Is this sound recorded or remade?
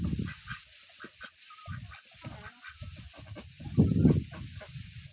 recorded